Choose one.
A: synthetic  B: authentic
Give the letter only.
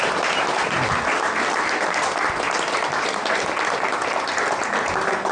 B